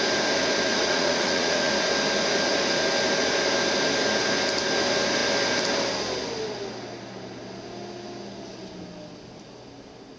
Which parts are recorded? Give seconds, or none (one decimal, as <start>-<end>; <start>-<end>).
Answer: 0.0-0.7; 1.7-10.2